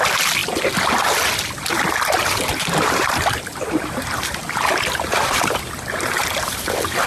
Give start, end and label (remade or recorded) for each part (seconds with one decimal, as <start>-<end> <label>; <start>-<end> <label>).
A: 0.0-2.2 recorded; 2.2-6.5 remade; 6.5-7.1 recorded